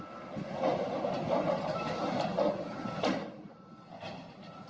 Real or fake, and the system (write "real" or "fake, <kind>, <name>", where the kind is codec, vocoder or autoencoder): real